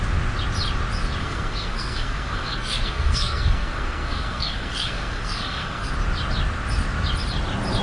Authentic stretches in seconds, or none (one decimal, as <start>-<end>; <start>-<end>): 0.0-1.2; 5.9-7.8